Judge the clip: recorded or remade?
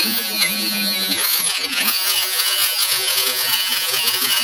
remade